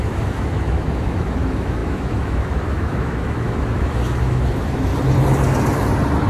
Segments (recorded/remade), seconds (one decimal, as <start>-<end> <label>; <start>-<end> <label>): 0.0-4.9 remade; 4.9-6.3 recorded